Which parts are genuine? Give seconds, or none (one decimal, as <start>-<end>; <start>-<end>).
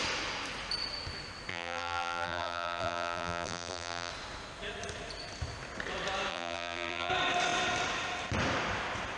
0.0-1.5; 4.1-6.3; 7.1-9.2